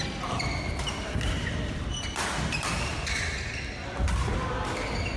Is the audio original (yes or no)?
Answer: yes